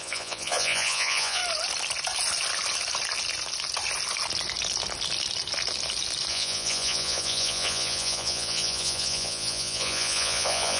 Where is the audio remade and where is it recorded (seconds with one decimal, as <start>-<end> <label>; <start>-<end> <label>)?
0.0-1.4 remade; 1.4-6.3 recorded; 6.3-10.8 remade